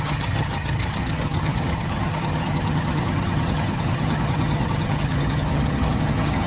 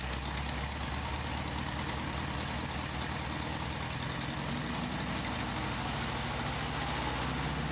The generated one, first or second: first